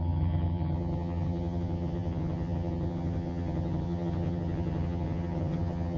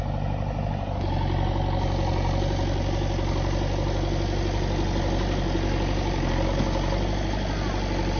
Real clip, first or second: second